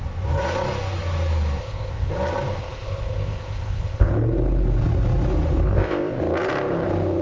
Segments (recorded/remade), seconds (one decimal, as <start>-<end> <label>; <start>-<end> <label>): 0.0-1.6 recorded; 1.6-2.1 remade; 2.1-2.6 recorded; 2.6-4.1 remade; 4.1-5.7 recorded; 5.7-6.2 remade; 6.2-7.2 recorded